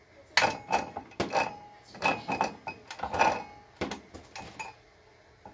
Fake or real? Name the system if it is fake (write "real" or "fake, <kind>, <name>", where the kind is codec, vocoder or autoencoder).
real